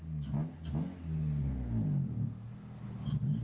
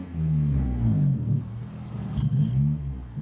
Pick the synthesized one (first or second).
second